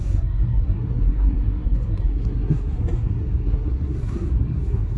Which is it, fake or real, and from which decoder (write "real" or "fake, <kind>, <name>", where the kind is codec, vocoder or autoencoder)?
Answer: fake, codec, SNAC